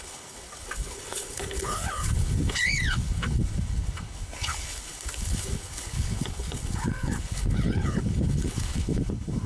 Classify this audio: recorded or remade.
remade